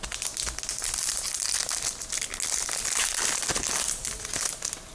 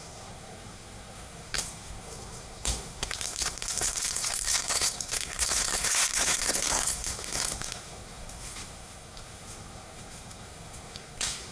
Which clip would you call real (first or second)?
first